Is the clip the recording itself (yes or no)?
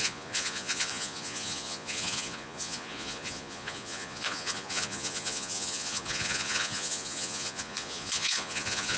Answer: no